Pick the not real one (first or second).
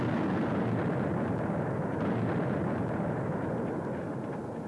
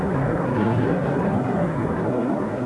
second